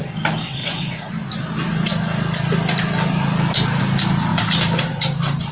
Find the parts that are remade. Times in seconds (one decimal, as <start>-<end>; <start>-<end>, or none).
0.6-1.1